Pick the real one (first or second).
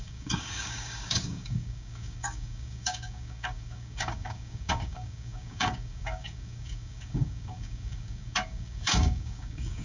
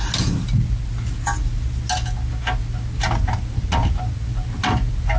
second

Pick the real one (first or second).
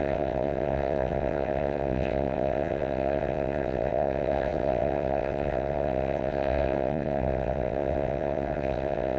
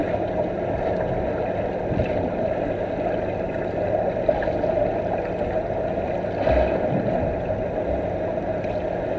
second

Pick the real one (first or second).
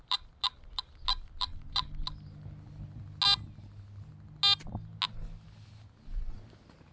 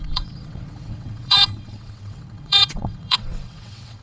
first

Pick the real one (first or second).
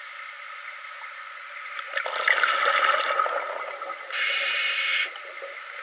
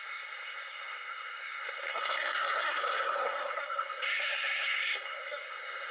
first